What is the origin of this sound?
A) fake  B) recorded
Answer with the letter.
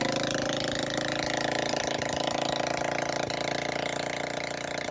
B